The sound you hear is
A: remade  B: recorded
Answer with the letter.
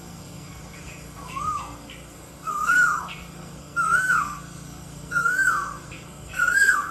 A